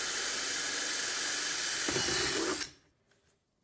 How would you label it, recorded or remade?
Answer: recorded